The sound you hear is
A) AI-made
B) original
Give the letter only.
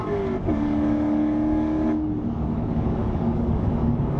A